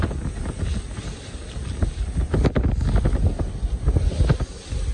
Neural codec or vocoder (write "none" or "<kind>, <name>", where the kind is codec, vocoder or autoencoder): none